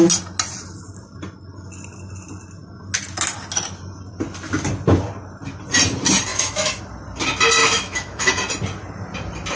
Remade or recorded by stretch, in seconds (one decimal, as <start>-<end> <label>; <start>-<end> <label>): 0.0-6.3 recorded; 6.3-6.8 remade; 6.8-7.6 recorded; 7.6-8.3 remade; 8.3-9.6 recorded

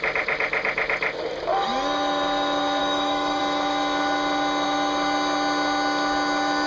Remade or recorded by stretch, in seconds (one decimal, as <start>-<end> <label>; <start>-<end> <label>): 0.0-2.8 recorded; 2.8-3.4 remade; 3.4-6.7 recorded

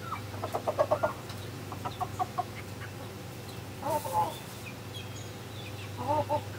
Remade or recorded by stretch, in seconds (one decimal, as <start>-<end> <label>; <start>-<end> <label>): 0.0-2.1 recorded; 2.1-2.6 remade; 2.6-6.6 recorded